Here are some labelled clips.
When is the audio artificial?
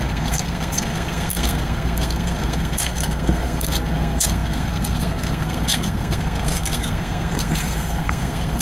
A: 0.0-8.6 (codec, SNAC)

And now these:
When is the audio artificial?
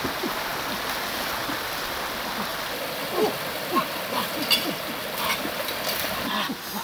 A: none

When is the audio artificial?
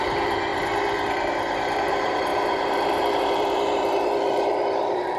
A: 0.0-0.5 (vocoder, BigVGAN v2); 1.3-5.2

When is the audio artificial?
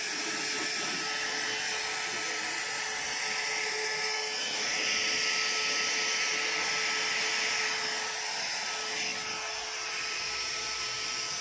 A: none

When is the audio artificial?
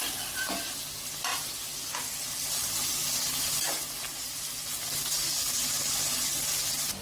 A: none